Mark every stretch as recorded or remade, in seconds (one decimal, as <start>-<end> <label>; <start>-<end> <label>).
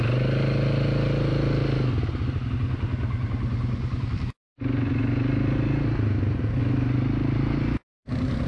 0.0-8.5 recorded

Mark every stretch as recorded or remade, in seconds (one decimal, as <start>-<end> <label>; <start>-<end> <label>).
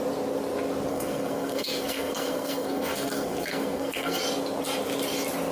0.0-0.9 recorded; 0.9-4.2 remade; 4.2-5.5 recorded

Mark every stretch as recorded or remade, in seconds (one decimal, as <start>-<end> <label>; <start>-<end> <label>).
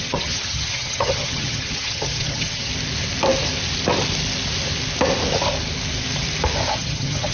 0.0-2.7 remade; 2.7-6.7 recorded; 6.7-7.3 remade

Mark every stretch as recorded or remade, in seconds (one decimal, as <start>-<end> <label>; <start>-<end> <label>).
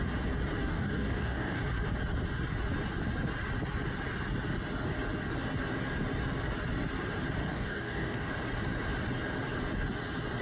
0.0-0.6 recorded; 0.6-1.6 remade; 1.6-7.4 recorded; 7.4-8.3 remade; 8.3-10.4 recorded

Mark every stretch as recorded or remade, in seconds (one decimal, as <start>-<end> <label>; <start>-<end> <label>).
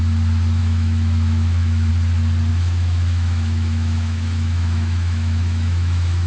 0.0-0.6 recorded; 0.6-1.9 remade; 1.9-2.5 recorded; 2.5-6.3 remade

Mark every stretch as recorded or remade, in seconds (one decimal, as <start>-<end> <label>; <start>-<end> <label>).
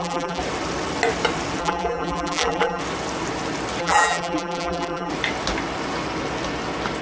0.0-0.4 remade; 0.4-1.6 recorded; 1.6-2.8 remade; 2.8-3.8 recorded; 3.8-5.1 remade; 5.1-7.0 recorded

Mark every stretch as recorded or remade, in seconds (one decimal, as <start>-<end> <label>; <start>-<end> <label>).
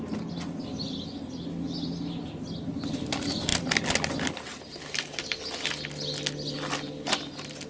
0.0-7.7 recorded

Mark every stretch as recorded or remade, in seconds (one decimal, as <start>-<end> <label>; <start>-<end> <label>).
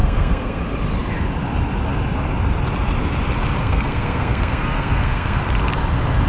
0.0-0.6 remade; 0.6-3.6 recorded; 3.6-5.4 remade; 5.4-6.3 recorded